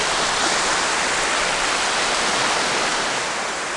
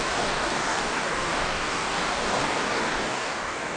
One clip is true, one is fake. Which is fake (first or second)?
second